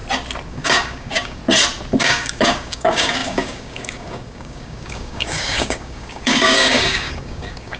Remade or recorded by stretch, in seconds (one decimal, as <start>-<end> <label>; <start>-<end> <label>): 0.0-0.5 recorded; 0.5-1.4 remade; 1.4-2.0 recorded; 2.0-7.8 remade